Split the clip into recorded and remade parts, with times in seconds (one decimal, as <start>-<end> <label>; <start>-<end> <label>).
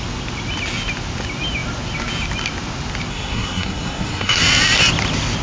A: 0.0-3.1 recorded; 3.1-4.4 remade; 4.4-5.4 recorded